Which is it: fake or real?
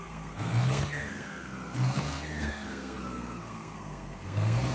fake